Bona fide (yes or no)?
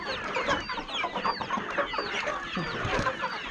yes